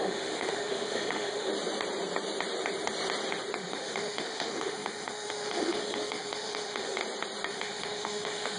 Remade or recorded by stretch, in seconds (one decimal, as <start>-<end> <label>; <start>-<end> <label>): 0.0-1.5 remade; 1.5-3.6 recorded; 3.6-7.0 remade; 7.0-7.5 recorded; 7.5-8.6 remade